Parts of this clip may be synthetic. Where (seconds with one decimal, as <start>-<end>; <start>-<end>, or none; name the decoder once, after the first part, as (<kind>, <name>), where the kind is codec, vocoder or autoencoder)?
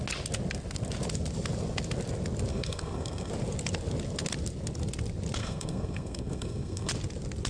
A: 2.5-3.3 (codec, SNAC); 5.4-6.9